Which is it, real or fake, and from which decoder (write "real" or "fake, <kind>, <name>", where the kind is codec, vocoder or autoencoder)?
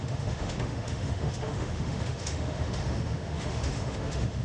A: fake, autoencoder, DAC-VAE